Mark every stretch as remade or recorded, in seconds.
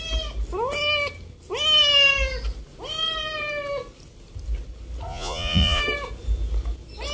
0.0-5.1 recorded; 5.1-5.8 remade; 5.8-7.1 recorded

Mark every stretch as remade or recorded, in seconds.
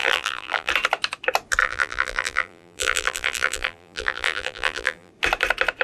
0.0-0.7 remade; 0.7-1.6 recorded; 1.6-5.1 remade; 5.1-5.8 recorded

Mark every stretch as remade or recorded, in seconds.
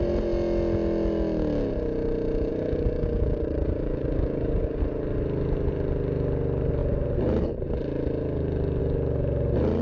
0.0-2.5 recorded; 2.5-4.8 remade; 4.8-9.8 recorded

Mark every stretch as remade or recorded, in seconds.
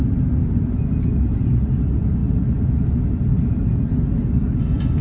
0.0-5.0 recorded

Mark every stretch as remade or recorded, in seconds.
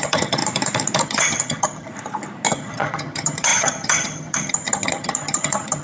0.0-0.4 remade; 0.4-1.0 recorded; 1.0-1.9 remade; 1.9-2.5 recorded; 2.5-5.8 remade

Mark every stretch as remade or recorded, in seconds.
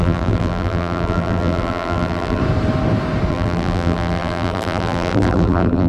0.0-2.4 remade; 2.4-3.3 recorded; 3.3-5.9 remade